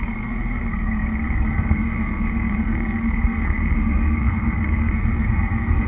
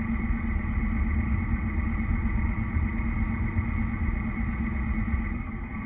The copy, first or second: first